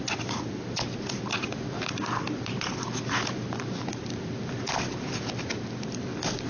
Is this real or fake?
fake